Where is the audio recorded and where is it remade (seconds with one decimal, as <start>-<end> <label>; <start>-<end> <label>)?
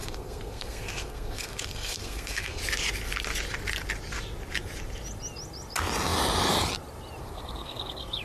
0.0-2.6 remade; 2.6-7.2 recorded; 7.2-8.2 remade